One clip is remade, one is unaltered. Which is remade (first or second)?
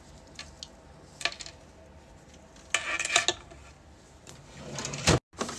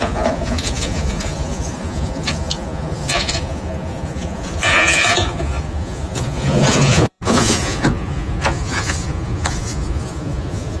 second